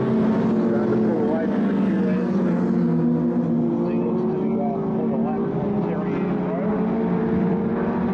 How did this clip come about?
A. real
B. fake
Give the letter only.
A